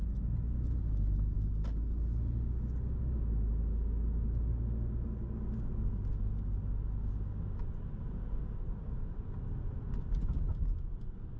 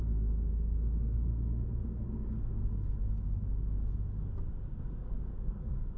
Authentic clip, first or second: first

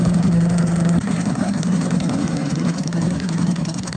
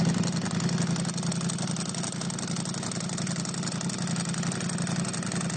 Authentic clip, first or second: second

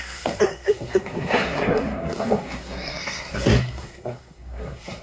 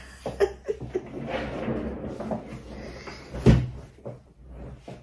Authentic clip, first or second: second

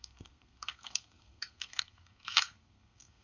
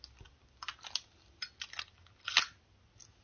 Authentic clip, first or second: second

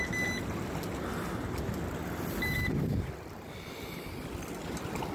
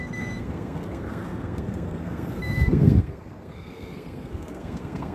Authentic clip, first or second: first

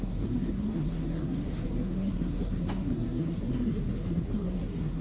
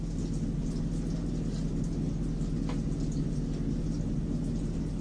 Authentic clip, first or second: second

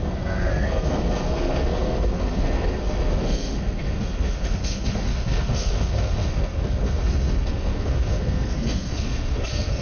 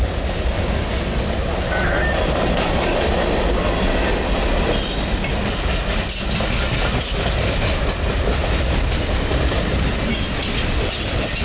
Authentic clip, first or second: second